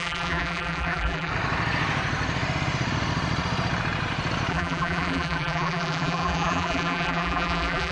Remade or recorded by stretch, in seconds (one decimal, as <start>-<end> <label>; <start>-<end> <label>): 0.0-1.3 remade; 1.3-4.5 recorded; 4.5-7.9 remade

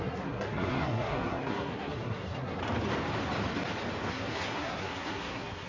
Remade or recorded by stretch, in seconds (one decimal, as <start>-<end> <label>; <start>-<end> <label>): 0.0-2.6 remade; 2.6-4.1 recorded; 4.1-5.7 remade

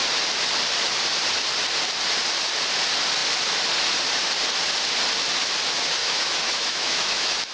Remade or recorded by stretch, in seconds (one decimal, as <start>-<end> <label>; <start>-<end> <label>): 0.0-6.0 recorded; 6.0-7.5 remade

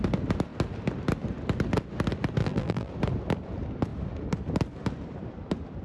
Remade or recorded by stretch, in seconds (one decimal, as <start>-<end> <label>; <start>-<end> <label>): 0.0-2.4 recorded; 2.4-2.9 remade; 2.9-5.8 recorded

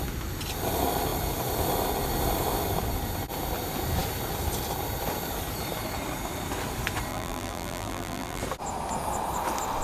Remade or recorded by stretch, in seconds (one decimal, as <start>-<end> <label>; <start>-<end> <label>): 0.0-7.1 recorded; 7.1-8.4 remade; 8.4-9.8 recorded